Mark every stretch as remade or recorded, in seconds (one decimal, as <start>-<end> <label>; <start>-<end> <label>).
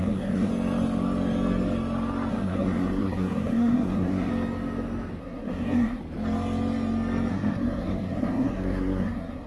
0.0-0.5 remade; 0.5-2.3 recorded; 2.3-4.3 remade; 4.3-5.2 recorded; 5.2-6.0 remade; 6.0-7.3 recorded; 7.3-9.5 remade